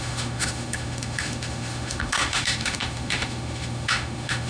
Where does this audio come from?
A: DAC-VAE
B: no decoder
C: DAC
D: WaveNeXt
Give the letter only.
A